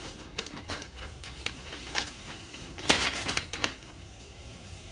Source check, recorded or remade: remade